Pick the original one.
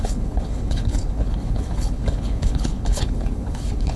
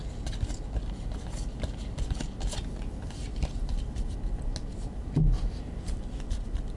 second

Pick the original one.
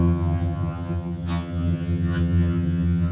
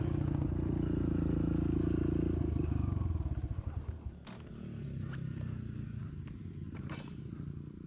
second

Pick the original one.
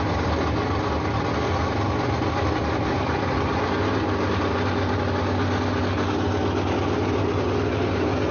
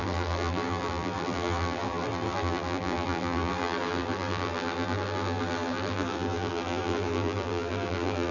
first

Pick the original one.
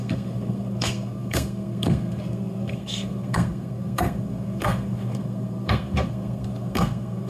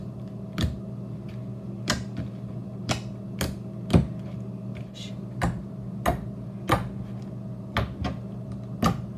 second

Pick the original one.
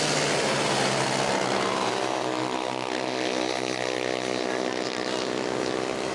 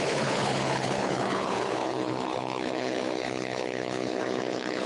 first